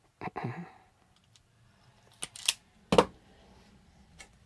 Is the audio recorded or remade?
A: recorded